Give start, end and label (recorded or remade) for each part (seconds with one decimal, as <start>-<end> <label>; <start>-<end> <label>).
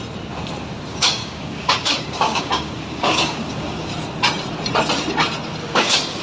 0.0-0.9 recorded; 0.9-3.9 remade; 3.9-5.6 recorded; 5.6-6.2 remade